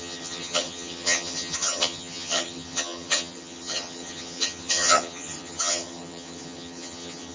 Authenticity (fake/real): fake